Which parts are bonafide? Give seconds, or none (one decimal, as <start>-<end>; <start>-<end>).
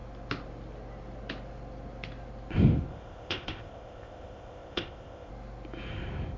0.0-2.9; 5.3-6.4